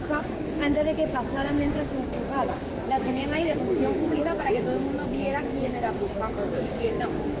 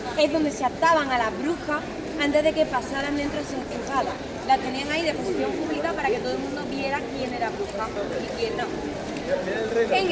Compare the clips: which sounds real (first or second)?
second